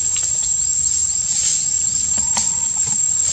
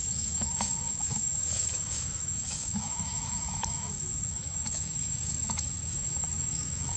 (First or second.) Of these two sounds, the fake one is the second